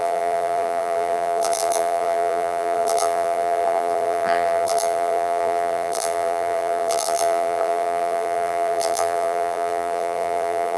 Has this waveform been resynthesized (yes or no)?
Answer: yes